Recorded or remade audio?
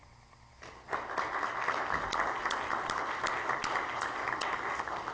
recorded